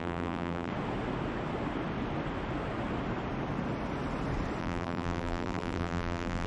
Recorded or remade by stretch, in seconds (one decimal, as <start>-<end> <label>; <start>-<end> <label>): 0.0-0.7 remade; 0.7-4.6 recorded; 4.6-6.5 remade